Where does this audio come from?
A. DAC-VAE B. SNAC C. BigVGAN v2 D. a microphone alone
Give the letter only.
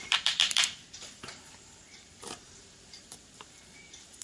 C